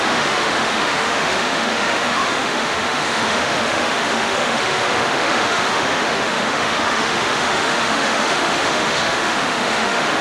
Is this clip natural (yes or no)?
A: no